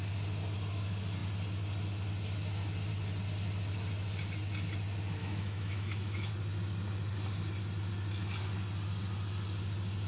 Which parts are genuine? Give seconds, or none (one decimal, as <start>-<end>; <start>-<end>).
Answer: 0.0-5.2; 6.3-10.1